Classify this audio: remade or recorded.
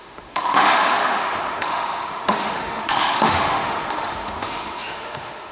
remade